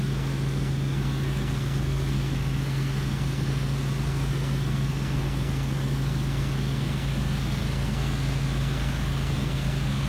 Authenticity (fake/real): fake